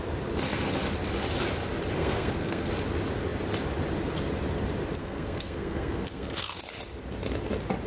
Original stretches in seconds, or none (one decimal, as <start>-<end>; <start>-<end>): 0.0-2.0; 2.7-5.0; 6.6-7.9